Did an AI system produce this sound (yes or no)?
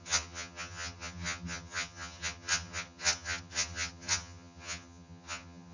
yes